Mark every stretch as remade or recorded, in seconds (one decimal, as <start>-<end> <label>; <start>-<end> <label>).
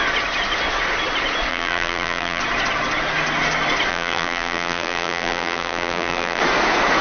0.0-1.5 recorded; 1.5-2.4 remade; 2.4-3.9 recorded; 3.9-6.4 remade; 6.4-7.0 recorded